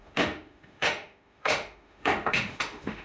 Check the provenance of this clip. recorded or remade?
remade